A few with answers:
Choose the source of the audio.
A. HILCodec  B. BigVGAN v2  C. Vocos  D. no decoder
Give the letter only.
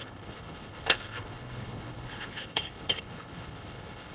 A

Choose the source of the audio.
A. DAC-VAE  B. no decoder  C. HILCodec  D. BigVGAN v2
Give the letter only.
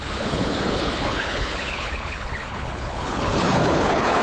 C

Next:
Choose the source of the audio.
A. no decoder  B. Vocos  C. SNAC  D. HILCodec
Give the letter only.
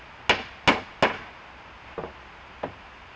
A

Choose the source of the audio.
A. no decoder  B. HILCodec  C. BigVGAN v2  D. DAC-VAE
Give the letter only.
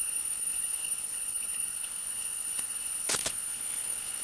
B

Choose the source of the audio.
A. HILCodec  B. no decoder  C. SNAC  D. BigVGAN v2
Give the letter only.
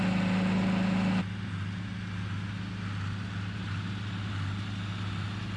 B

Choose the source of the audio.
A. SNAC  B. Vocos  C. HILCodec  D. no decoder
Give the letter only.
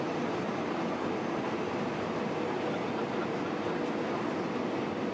D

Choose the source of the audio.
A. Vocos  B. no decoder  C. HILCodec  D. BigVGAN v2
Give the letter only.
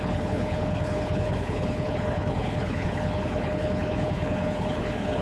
C